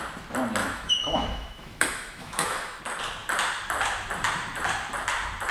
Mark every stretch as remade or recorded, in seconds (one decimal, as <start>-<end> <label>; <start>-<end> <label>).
0.0-0.6 recorded; 0.6-2.8 remade; 2.8-5.5 recorded